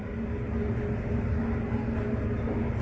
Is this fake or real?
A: real